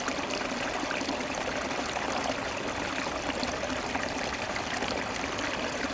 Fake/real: real